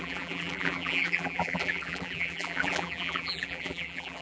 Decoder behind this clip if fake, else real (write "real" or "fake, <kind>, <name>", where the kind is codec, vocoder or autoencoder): fake, vocoder, BigVGAN v2